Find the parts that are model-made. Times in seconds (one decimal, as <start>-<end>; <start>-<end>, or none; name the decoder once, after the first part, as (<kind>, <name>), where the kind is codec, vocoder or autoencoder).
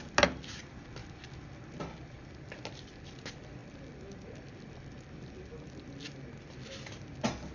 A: none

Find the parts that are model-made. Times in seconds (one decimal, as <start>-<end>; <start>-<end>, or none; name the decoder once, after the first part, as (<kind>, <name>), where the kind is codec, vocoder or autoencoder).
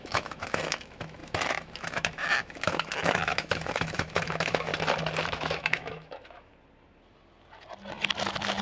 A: 0.0-4.7 (autoencoder, DAC-VAE); 5.3-6.5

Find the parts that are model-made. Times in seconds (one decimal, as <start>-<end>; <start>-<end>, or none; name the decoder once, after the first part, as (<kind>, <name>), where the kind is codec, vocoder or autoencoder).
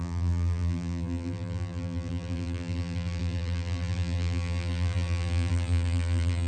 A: 0.0-6.5 (vocoder, BigVGAN v2)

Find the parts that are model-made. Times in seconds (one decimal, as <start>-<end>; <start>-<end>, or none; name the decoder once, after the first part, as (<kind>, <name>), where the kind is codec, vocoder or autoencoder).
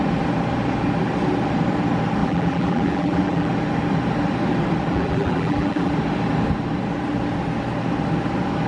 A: 2.2-3.5 (vocoder, BigVGAN v2); 4.9-5.9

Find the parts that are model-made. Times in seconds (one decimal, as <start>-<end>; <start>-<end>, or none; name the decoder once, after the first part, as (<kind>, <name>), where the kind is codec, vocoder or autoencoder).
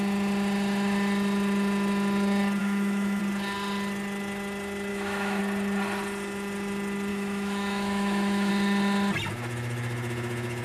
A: 2.6-3.2 (autoencoder, DAC-VAE); 4.9-5.4; 7.1-8.5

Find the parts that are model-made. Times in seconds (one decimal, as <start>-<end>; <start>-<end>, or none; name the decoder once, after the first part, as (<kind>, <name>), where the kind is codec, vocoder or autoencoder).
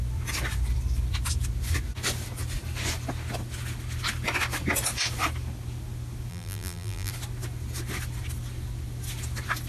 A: 6.3-7.1 (vocoder, BigVGAN v2)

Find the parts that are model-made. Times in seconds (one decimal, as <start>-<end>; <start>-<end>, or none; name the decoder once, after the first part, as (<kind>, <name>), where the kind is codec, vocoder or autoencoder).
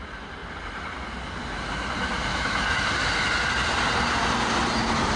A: 2.3-2.9 (autoencoder, DAC-VAE)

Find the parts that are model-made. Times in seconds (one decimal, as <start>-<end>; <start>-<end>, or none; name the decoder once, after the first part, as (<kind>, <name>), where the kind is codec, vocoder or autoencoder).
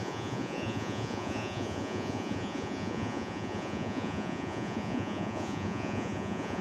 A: 0.0-6.6 (vocoder, Vocos)